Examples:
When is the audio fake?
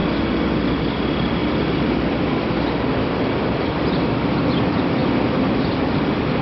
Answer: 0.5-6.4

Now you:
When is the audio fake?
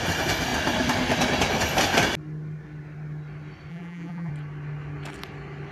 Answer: 3.7-4.3